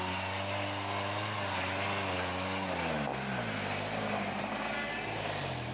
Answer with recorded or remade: recorded